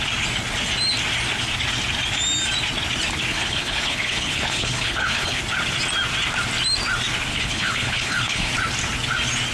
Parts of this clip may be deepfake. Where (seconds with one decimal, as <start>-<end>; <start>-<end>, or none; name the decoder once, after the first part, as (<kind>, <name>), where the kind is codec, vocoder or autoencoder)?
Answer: 3.3-5.4 (codec, HILCodec); 7.3-8.5

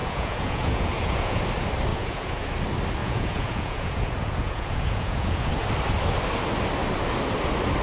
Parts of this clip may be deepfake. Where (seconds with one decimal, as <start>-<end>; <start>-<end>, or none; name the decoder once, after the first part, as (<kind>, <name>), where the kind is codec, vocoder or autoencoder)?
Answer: 0.0-1.4 (vocoder, Vocos); 1.9-2.5; 3.0-5.5

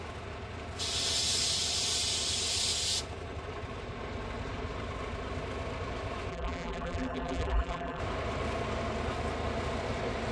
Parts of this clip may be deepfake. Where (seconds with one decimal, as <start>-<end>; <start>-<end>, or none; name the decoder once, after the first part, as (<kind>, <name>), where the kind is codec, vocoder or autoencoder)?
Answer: 6.3-8.0 (vocoder, BigVGAN v2)

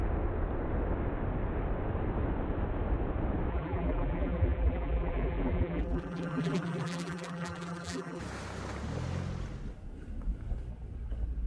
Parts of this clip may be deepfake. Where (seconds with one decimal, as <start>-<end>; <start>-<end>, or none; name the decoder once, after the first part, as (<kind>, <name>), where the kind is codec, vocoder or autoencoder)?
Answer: 3.5-8.2 (vocoder, BigVGAN v2)

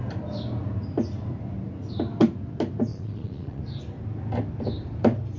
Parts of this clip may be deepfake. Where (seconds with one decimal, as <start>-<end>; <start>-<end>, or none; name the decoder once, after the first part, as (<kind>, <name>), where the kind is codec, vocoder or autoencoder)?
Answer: 2.9-3.6 (vocoder, Vocos)

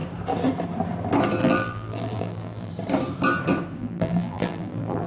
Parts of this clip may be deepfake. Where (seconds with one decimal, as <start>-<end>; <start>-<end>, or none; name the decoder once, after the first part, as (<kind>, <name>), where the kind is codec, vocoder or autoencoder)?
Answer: 1.4-2.7 (vocoder, BigVGAN v2); 3.8-5.1